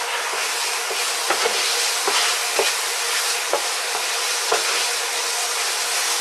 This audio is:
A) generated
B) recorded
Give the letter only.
B